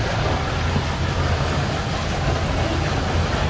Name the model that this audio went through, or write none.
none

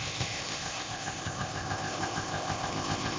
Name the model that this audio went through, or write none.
codec, ZipCodec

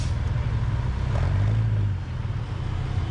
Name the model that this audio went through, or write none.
none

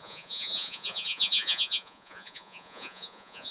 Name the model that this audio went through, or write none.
vocoder, Vocos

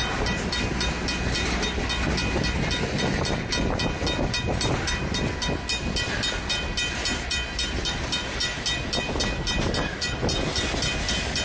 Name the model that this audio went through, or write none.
none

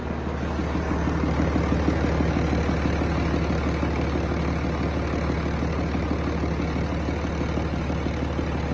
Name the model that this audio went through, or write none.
none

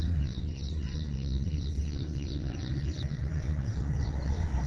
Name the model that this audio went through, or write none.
vocoder, WaveNeXt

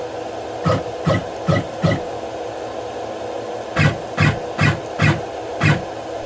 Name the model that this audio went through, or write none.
none